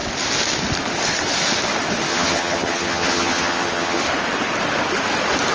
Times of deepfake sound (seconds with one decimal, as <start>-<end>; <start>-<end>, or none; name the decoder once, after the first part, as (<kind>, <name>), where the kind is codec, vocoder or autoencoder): 2.1-4.0 (vocoder, HiFi-GAN)